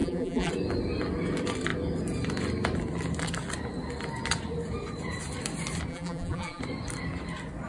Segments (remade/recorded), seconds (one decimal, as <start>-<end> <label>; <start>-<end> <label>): 0.0-0.5 remade; 0.5-5.9 recorded; 5.9-6.6 remade; 6.6-7.7 recorded